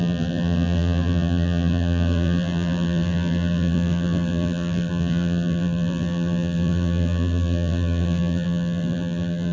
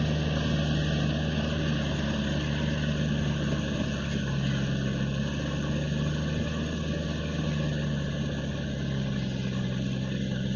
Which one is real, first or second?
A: second